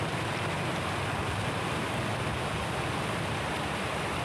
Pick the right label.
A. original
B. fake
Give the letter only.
A